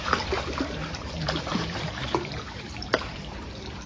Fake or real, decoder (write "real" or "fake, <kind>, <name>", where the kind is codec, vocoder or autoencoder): fake, vocoder, BigVGAN v2